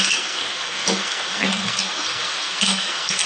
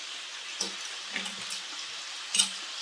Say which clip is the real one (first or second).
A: second